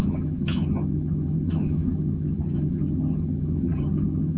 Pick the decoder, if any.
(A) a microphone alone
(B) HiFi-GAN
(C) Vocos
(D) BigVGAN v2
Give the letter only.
B